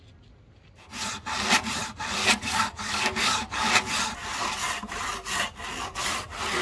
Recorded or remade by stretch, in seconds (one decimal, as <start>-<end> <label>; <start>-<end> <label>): 0.0-2.2 recorded; 2.2-3.7 remade; 3.7-6.6 recorded